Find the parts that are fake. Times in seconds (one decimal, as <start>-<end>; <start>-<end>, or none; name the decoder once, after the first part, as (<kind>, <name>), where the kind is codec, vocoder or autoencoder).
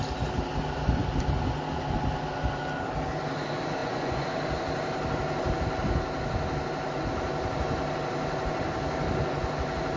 3.8-4.3 (vocoder, Vocos)